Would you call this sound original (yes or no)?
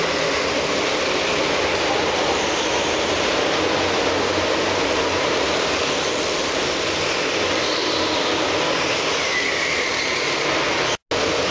yes